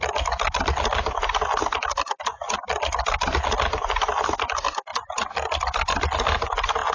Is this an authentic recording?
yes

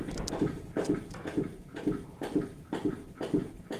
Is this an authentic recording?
no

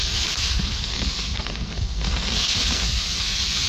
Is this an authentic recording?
no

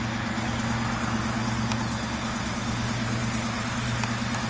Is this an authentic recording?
yes